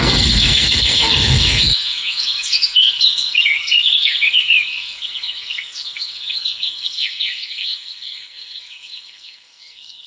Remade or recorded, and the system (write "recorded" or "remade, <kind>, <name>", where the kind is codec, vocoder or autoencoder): remade, codec, SNAC